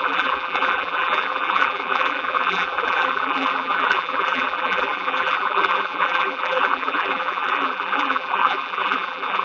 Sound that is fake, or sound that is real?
fake